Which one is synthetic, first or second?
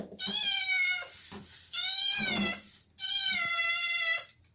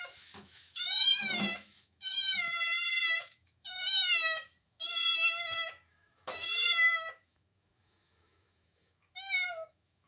second